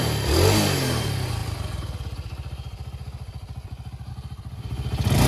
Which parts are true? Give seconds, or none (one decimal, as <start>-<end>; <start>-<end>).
0.0-5.3